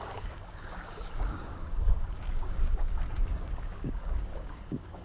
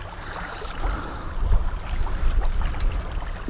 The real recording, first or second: second